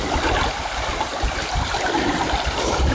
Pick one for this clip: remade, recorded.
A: remade